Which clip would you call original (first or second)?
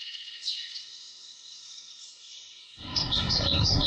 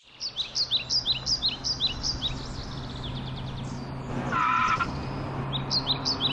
second